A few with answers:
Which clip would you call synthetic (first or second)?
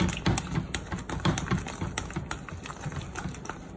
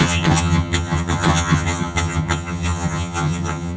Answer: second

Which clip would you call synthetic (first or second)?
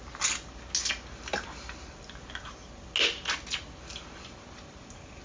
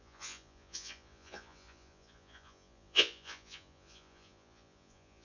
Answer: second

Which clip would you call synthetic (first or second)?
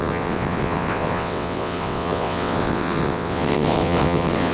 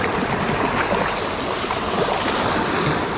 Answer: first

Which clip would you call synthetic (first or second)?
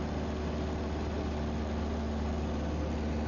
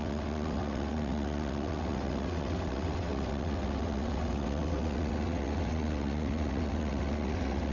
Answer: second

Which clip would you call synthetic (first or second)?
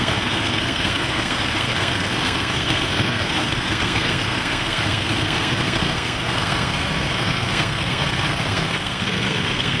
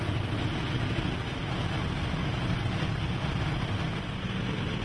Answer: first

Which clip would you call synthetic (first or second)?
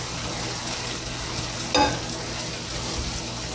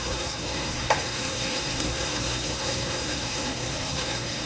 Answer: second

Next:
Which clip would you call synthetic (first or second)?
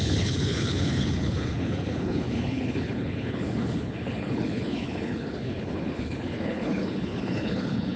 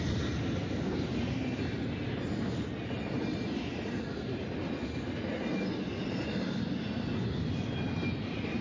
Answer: first